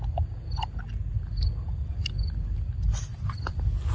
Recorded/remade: recorded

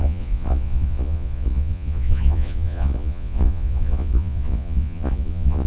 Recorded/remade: remade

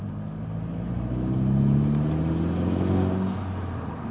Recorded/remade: recorded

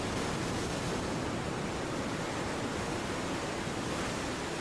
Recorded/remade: recorded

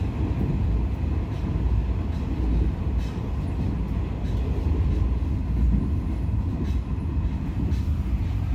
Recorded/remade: recorded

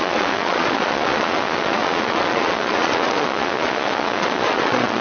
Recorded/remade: remade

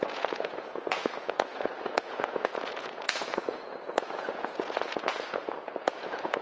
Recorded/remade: remade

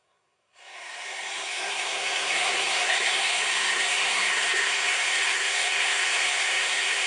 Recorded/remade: remade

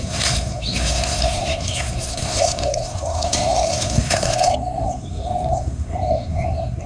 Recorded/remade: remade